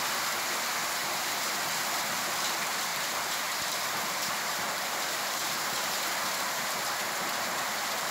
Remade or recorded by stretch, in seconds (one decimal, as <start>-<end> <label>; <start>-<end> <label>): 0.0-0.8 recorded; 0.8-1.4 remade; 1.4-2.9 recorded; 2.9-8.1 remade